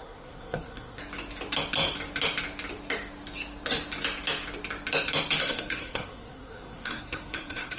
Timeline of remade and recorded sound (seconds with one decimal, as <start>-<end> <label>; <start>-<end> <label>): 0.0-1.0 remade; 1.0-5.4 recorded; 5.4-7.8 remade